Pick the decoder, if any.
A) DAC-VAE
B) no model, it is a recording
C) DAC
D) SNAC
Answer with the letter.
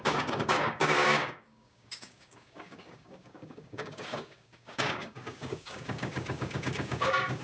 C